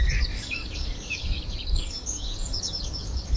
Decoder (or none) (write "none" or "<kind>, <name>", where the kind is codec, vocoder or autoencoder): codec, DAC